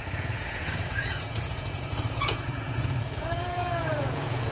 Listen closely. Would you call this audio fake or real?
fake